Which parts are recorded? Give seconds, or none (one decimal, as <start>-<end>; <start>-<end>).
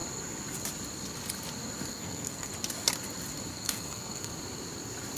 0.0-1.9; 2.5-3.5; 4.3-5.2